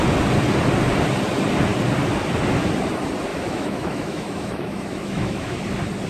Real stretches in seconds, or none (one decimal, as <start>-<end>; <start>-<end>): 0.0-3.3; 5.6-6.1